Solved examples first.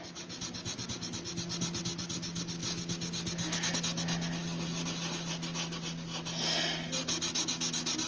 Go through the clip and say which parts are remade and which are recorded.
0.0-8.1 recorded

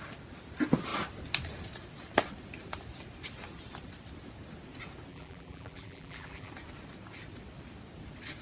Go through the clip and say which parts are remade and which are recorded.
0.0-5.1 recorded; 5.1-6.5 remade; 6.5-8.4 recorded

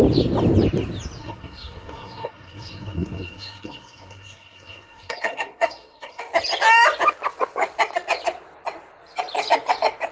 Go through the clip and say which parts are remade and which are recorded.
0.0-1.2 recorded; 1.2-6.2 remade; 6.2-10.1 recorded